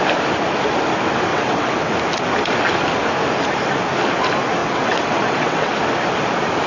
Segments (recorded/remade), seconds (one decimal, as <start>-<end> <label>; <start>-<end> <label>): 0.0-1.3 recorded; 1.3-1.9 remade; 1.9-4.6 recorded; 4.6-5.7 remade; 5.7-6.7 recorded